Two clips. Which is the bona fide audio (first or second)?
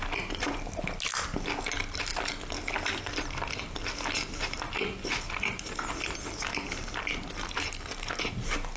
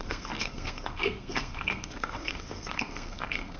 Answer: first